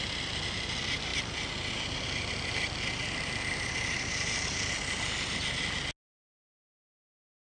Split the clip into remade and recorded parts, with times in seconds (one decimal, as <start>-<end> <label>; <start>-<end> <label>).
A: 0.0-7.6 recorded